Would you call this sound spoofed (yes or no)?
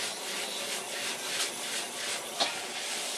no